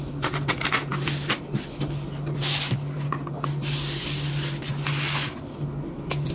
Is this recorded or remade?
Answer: recorded